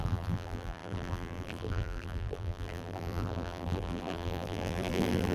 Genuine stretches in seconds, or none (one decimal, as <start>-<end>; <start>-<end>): none